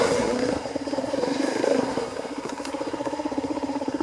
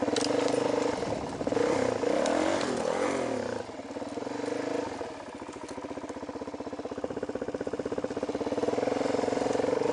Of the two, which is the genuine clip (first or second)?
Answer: second